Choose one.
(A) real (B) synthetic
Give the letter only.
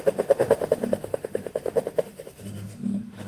B